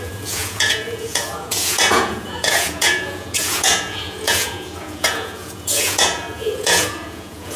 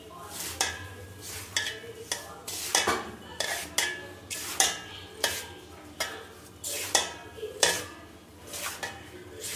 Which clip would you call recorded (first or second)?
second